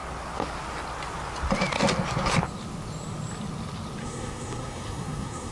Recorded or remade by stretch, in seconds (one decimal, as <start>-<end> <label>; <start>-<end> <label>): 0.0-4.0 recorded; 4.0-5.5 remade